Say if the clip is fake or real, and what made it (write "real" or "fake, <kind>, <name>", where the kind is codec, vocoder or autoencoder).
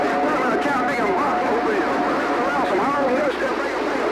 fake, vocoder, BigVGAN v2